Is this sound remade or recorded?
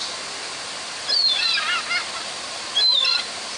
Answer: recorded